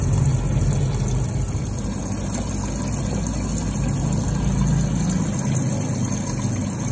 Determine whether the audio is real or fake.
real